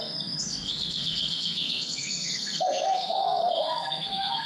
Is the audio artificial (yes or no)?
yes